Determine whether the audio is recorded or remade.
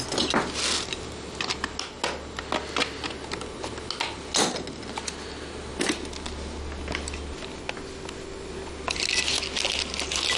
recorded